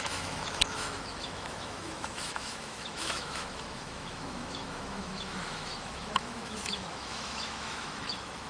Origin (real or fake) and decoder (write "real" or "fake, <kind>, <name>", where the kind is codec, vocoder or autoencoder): fake, autoencoder, DAC-VAE